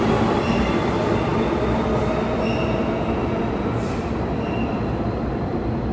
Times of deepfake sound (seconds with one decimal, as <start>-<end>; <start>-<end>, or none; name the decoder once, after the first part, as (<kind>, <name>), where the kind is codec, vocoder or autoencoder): none